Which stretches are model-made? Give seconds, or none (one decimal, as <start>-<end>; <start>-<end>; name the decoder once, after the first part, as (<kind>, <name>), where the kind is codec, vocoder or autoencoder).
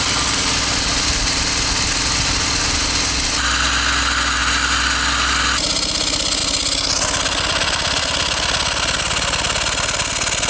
none